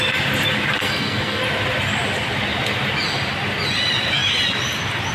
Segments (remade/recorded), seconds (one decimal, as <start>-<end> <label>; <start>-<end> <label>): 0.0-0.8 recorded; 0.8-1.4 remade; 1.4-5.1 recorded

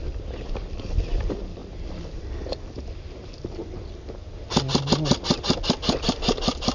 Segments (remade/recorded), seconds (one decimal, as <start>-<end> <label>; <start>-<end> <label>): 0.0-6.7 recorded

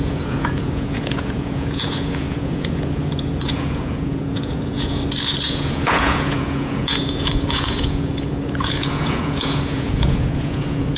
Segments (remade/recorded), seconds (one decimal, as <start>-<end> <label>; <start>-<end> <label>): 0.0-5.0 remade; 5.0-5.5 recorded; 5.5-11.0 remade

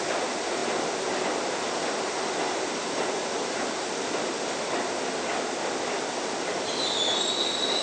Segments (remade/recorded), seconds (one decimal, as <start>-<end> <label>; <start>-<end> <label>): 0.0-7.8 recorded

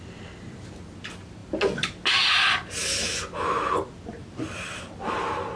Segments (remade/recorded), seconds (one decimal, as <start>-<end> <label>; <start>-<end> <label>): 0.0-5.6 recorded

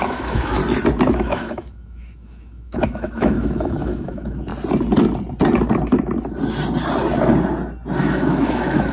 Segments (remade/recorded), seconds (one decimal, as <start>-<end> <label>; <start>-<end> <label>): 0.0-0.6 remade; 0.6-1.1 recorded; 1.1-4.5 remade; 4.5-8.0 recorded; 8.0-8.9 remade